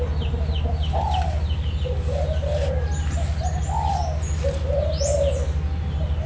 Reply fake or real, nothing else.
real